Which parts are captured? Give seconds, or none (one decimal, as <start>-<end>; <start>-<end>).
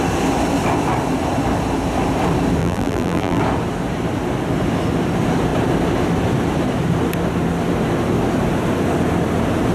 0.0-2.6; 3.4-9.7